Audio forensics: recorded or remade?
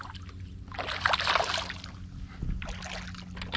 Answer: recorded